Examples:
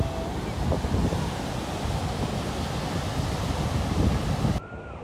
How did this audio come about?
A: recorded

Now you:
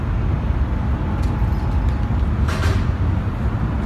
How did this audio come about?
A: recorded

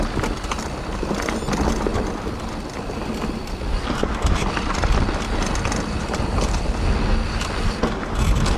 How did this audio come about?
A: recorded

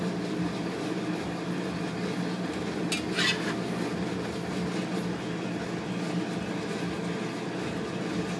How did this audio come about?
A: recorded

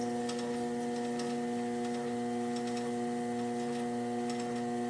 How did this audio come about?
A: recorded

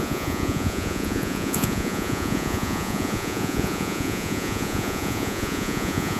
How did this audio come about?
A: remade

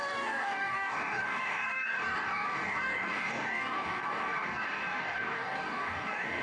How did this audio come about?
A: remade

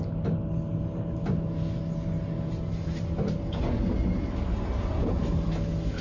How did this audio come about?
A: recorded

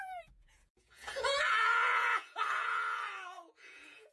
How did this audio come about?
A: remade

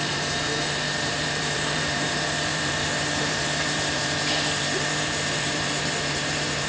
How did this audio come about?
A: remade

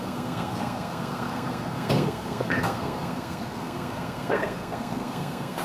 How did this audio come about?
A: remade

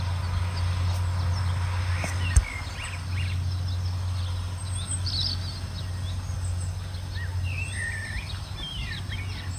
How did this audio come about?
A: recorded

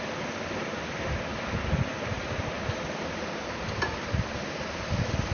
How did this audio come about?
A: recorded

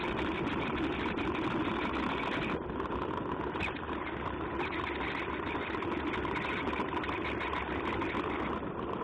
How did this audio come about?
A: recorded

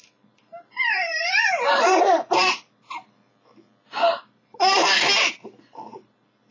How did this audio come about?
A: remade